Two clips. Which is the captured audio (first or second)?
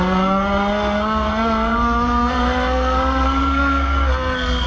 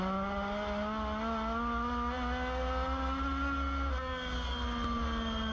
second